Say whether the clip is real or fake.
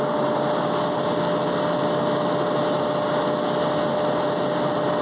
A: real